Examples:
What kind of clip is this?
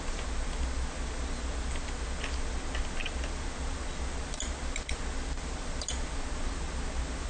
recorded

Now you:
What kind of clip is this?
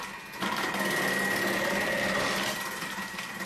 recorded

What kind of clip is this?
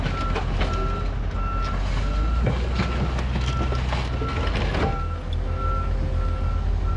recorded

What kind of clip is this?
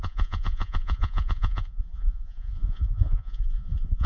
remade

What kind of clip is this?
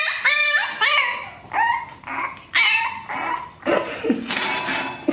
recorded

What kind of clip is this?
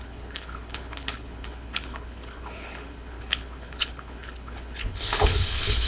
remade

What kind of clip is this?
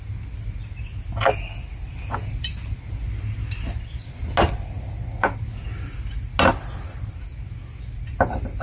recorded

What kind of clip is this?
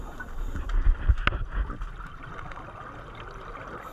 recorded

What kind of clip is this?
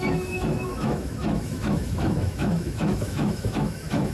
remade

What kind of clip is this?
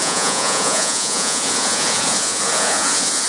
remade